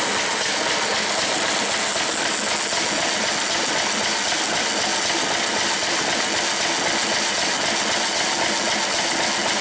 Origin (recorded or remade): recorded